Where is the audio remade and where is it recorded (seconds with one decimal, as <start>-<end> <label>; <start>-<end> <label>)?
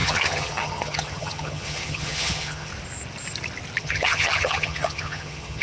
0.0-2.7 remade; 2.7-3.8 recorded; 3.8-5.6 remade